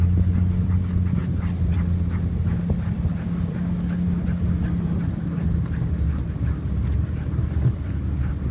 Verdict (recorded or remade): recorded